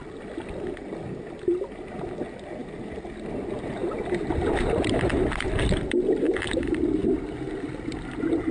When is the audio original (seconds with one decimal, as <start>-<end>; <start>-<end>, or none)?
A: 0.0-8.5